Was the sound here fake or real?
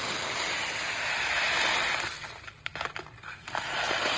real